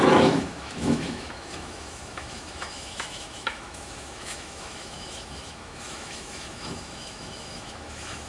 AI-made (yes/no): yes